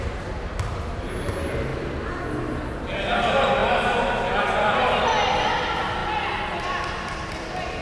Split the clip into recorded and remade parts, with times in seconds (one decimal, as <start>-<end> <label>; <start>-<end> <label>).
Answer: 0.0-7.8 recorded